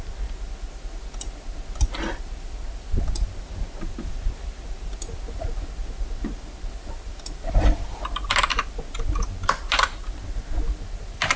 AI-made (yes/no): no